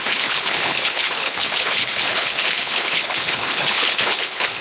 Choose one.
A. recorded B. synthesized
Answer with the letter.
B